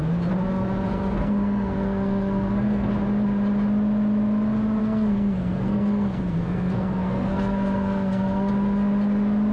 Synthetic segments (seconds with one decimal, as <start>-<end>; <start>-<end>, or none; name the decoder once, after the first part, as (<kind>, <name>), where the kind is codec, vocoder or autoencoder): 0.9-2.9 (codec, SNAC); 4.8-8.5